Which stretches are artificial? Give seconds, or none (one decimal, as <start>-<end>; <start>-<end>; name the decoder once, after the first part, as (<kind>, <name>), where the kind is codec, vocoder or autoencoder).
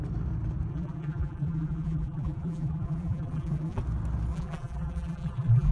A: 0.7-3.8 (vocoder, BigVGAN v2); 4.3-5.7